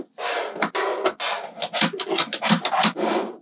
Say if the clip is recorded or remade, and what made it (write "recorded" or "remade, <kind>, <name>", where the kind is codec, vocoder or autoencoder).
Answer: recorded